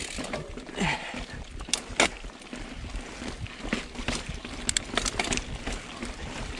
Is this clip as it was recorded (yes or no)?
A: yes